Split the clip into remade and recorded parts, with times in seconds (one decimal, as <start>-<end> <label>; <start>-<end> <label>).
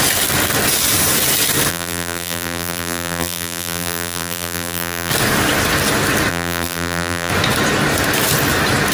0.0-1.7 recorded; 1.7-5.1 remade; 5.1-6.3 recorded; 6.3-7.3 remade; 7.3-8.9 recorded